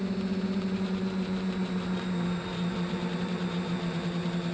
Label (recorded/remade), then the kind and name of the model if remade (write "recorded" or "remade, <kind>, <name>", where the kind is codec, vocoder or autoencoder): remade, vocoder, Vocos